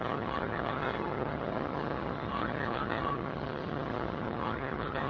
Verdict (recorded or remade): remade